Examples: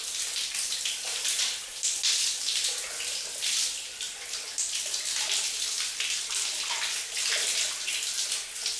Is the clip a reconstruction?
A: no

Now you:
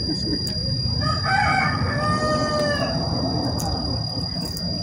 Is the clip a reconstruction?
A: no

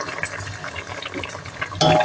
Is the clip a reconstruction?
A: no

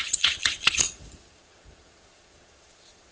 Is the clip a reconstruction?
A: yes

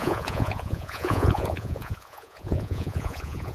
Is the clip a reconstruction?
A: yes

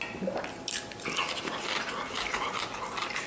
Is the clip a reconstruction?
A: no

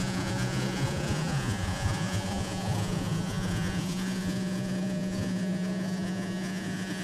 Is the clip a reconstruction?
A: yes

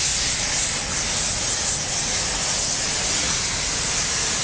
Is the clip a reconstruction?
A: no